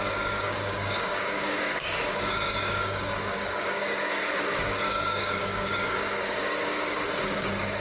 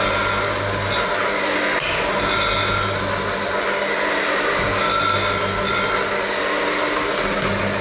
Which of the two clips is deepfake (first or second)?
first